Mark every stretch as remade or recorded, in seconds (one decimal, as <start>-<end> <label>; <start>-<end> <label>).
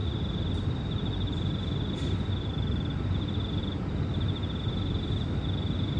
0.0-6.0 recorded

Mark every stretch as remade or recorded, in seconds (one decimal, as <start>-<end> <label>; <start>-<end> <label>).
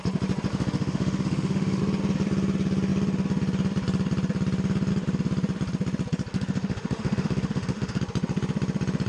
0.0-0.5 recorded; 0.5-1.8 remade; 1.8-6.3 recorded; 6.3-8.0 remade; 8.0-9.1 recorded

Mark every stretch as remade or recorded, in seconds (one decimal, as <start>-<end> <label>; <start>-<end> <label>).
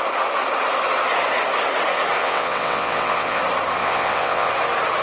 0.0-2.2 recorded; 2.2-3.4 remade; 3.4-3.8 recorded; 3.8-4.5 remade; 4.5-5.0 recorded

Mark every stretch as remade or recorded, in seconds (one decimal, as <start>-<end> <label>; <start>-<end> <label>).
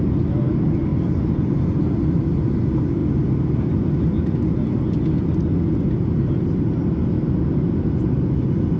0.0-8.8 recorded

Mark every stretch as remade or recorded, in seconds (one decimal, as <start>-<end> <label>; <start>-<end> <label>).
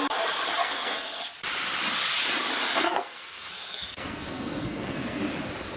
0.0-0.6 recorded; 0.6-1.2 remade; 1.2-2.7 recorded; 2.7-5.2 remade; 5.2-5.8 recorded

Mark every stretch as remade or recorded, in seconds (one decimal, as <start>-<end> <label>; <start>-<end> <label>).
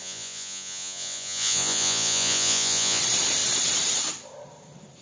0.0-3.0 remade; 3.0-5.0 recorded